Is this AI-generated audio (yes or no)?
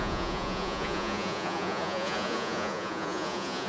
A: yes